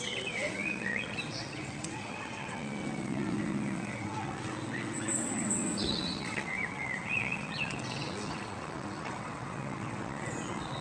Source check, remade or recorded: remade